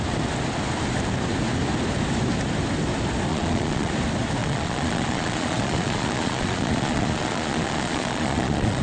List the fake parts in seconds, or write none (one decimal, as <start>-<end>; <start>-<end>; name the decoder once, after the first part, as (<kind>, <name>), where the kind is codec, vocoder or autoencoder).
3.3-3.9 (vocoder, Vocos); 4.4-8.8